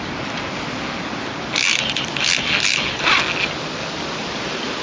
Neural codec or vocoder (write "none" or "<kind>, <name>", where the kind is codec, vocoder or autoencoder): none